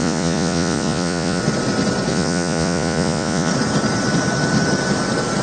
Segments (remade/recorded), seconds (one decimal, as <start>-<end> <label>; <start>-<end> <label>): 0.0-1.4 remade; 1.4-2.1 recorded; 2.1-3.5 remade; 3.5-5.4 recorded